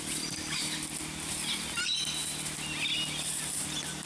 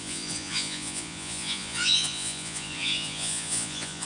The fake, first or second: second